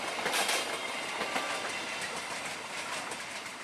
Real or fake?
real